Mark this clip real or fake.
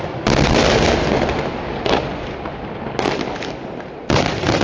real